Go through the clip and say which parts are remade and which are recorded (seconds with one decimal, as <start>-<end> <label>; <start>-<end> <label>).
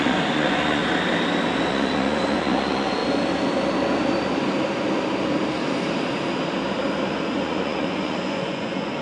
0.0-0.8 remade; 0.8-1.7 recorded; 1.7-3.0 remade; 3.0-7.1 recorded; 7.1-9.0 remade